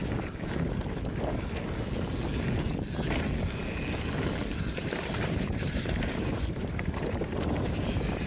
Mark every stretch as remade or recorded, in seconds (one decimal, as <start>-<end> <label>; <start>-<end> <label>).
0.0-4.7 recorded; 4.7-8.3 remade